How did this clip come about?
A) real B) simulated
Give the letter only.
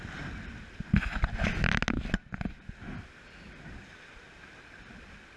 A